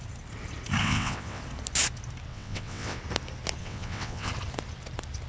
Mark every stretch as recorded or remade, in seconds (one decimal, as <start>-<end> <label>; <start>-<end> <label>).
0.0-0.8 recorded; 0.8-1.4 remade; 1.4-2.3 recorded; 2.3-3.0 remade; 3.0-3.6 recorded; 3.6-4.3 remade; 4.3-5.3 recorded